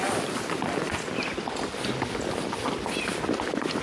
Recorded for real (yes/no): yes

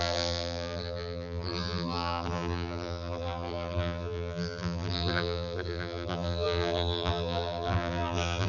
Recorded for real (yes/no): no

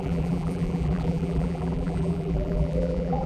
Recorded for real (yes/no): no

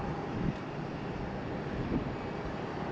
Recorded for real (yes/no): no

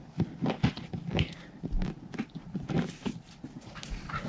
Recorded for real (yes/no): yes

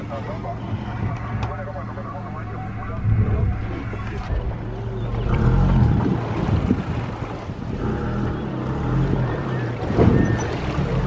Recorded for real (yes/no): yes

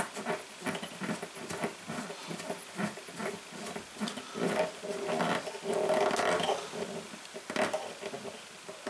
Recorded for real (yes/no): yes